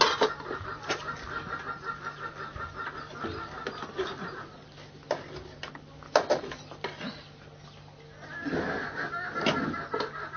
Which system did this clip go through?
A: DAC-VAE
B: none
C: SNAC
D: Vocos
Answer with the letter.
B